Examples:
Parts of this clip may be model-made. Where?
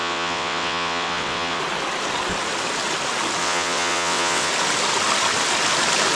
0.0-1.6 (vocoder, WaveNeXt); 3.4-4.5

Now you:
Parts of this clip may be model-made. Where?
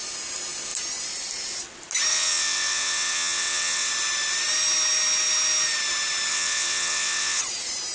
2.1-3.9 (vocoder, WaveNeXt); 6.3-7.4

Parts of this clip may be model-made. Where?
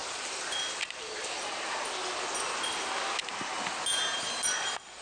none